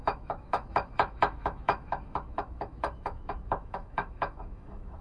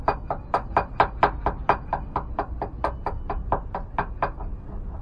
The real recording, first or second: second